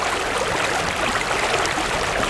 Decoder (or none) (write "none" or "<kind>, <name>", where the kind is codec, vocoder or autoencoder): none